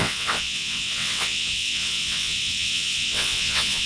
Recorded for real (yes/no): no